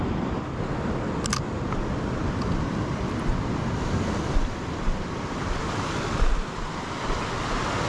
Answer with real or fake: real